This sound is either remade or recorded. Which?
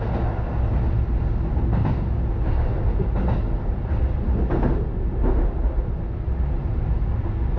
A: recorded